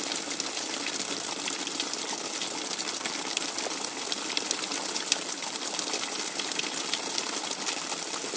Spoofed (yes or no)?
no